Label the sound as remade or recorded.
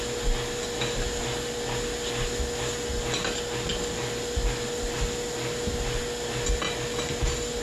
recorded